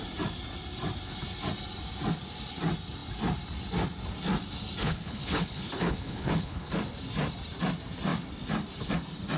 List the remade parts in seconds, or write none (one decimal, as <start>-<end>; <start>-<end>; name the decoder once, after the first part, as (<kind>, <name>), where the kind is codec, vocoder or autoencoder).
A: 4.8-6.7 (codec, HILCodec)